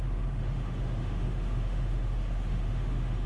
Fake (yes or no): yes